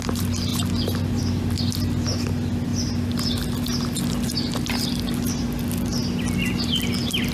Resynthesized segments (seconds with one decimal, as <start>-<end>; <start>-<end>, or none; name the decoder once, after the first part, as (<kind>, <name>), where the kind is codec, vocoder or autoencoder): none